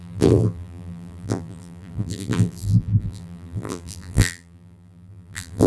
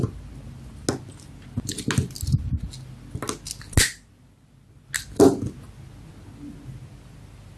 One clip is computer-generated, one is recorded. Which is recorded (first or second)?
second